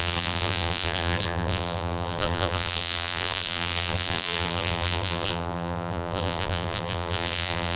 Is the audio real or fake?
fake